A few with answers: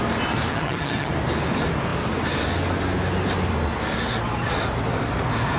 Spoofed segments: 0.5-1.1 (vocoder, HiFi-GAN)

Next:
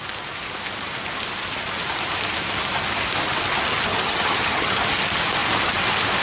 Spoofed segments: 3.9-4.8 (vocoder, HiFi-GAN)

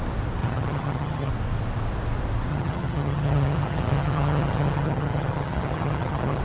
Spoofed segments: 0.4-1.3 (vocoder, HiFi-GAN); 2.5-6.4

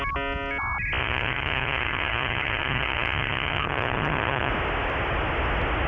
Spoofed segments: 1.0-4.5 (vocoder, HiFi-GAN)

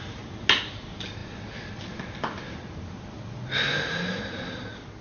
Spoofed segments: none

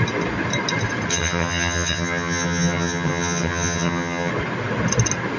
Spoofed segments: 1.1-4.3 (vocoder, HiFi-GAN)

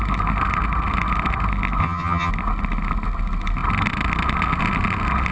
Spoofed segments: 1.8-2.3 (vocoder, HiFi-GAN)

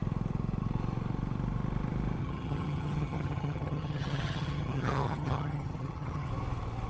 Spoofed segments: 2.2-6.3 (vocoder, HiFi-GAN)